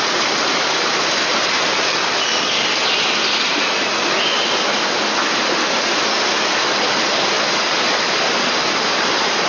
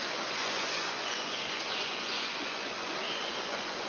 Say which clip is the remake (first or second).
second